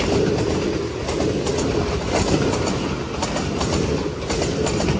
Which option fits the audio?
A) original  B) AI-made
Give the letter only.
A